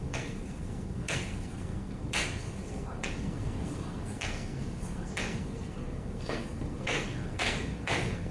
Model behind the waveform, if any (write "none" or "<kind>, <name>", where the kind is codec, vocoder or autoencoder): codec, SNAC